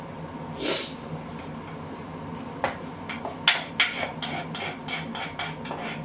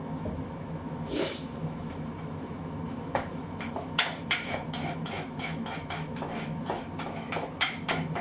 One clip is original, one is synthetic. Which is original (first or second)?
first